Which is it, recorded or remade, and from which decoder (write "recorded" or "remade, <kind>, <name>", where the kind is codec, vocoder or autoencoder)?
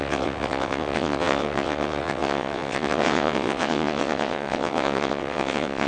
remade, vocoder, WaveNeXt